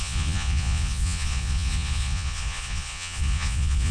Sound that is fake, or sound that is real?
fake